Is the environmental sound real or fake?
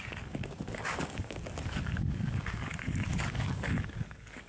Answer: fake